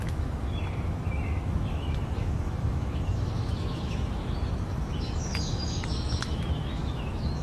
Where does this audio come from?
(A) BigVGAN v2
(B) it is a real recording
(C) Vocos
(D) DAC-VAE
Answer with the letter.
D